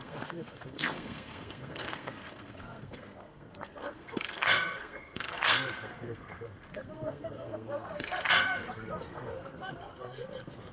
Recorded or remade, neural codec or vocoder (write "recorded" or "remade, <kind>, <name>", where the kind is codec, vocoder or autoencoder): remade, codec, SNAC